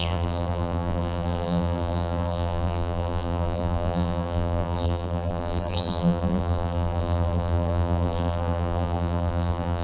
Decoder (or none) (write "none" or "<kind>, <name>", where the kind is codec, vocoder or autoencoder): vocoder, BigVGAN v2